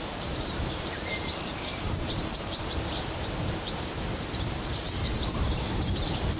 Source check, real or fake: fake